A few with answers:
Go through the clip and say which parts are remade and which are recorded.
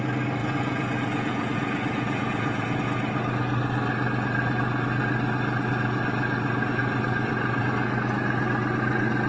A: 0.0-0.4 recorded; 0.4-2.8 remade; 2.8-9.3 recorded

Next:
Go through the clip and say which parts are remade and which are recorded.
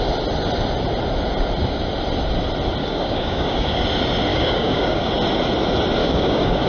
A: 0.0-2.8 recorded; 2.8-3.8 remade; 3.8-4.3 recorded; 4.3-5.1 remade; 5.1-6.0 recorded; 6.0-6.7 remade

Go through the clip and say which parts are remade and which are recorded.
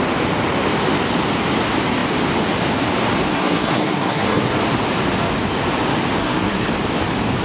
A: 0.0-3.3 recorded; 3.3-4.5 remade; 4.5-6.2 recorded; 6.2-6.7 remade; 6.7-7.4 recorded